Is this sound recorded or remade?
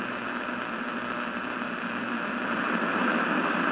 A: remade